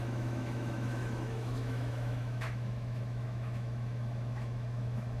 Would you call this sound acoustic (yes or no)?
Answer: no